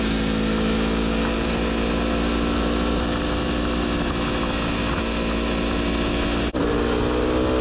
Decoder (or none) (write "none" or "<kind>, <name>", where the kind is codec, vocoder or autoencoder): none